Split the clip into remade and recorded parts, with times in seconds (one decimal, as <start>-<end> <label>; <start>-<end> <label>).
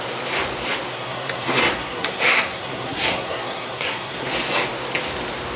0.0-0.9 recorded; 0.9-4.3 remade; 4.3-5.6 recorded